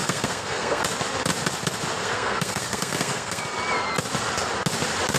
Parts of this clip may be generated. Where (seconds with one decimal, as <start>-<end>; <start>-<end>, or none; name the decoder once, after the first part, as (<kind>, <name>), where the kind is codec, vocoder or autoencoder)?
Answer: 0.0-0.8 (codec, SNAC); 2.0-3.4